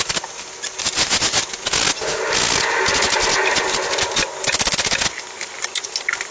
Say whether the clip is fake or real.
real